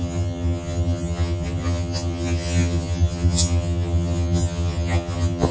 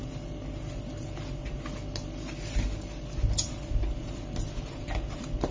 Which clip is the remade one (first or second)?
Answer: first